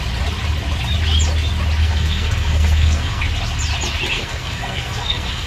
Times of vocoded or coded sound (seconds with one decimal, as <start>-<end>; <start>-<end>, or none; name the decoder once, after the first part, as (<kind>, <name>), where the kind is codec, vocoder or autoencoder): 1.8-3.2 (codec, SNAC); 4.1-5.5